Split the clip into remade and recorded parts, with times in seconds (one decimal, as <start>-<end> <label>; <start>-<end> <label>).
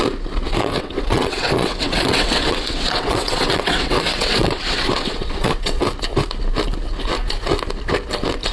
0.0-0.7 recorded; 0.7-5.8 remade; 5.8-8.5 recorded